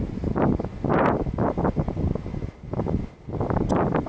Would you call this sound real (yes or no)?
yes